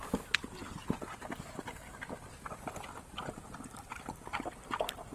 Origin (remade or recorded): recorded